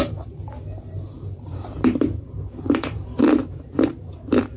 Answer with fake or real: fake